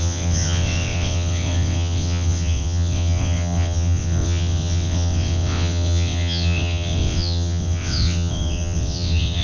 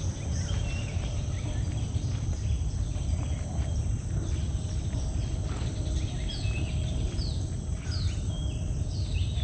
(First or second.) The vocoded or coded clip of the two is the first